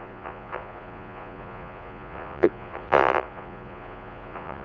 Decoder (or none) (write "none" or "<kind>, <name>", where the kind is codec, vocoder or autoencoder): vocoder, Vocos